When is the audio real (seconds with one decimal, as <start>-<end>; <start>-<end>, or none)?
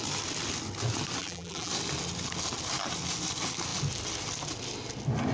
0.0-1.2; 1.7-5.3